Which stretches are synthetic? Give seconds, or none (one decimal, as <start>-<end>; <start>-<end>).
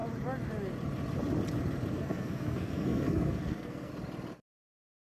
1.9-3.9